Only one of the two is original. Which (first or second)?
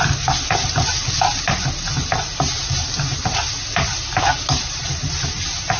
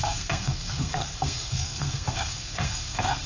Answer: first